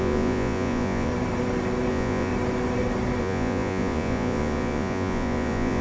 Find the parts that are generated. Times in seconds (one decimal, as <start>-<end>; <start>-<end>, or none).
0.0-1.1; 1.9-2.3; 3.2-5.8